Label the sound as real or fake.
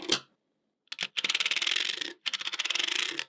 real